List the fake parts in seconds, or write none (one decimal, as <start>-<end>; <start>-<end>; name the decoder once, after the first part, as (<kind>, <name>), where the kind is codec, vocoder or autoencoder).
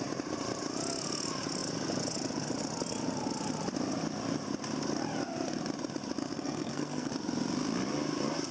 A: 6.2-7.1 (codec, SNAC)